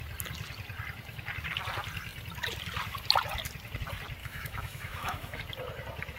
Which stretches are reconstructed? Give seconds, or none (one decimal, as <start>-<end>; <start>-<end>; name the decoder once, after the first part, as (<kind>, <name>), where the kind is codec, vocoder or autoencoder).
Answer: 4.2-5.4 (autoencoder, DAC-VAE)

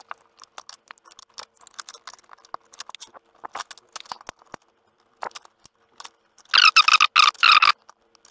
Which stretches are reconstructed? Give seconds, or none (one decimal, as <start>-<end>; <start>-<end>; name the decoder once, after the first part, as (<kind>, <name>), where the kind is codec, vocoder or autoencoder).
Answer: none

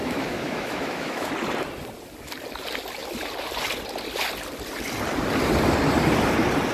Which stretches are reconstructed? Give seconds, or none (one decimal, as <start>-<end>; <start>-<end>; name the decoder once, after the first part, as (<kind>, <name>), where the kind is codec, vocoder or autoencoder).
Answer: 0.0-1.3 (autoencoder, DAC-VAE)

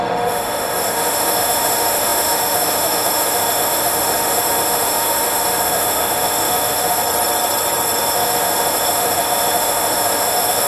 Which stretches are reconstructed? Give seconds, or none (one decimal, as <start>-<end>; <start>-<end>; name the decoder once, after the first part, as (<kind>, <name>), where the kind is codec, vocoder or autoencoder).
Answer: 0.0-7.0 (autoencoder, DAC-VAE); 8.0-10.7

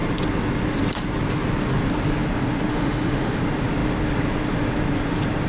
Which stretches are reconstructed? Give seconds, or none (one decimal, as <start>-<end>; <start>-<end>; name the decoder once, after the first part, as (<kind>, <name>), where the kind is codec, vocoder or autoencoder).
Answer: 2.7-3.4 (autoencoder, DAC-VAE)

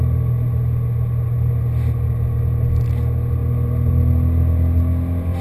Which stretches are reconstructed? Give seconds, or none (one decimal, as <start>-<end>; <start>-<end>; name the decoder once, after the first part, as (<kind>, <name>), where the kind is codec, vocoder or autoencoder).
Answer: none